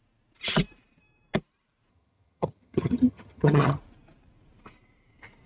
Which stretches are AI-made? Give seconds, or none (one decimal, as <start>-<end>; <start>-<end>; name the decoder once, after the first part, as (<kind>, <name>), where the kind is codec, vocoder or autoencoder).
1.9-3.8 (vocoder, HiFi-GAN)